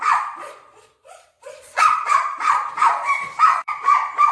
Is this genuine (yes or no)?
no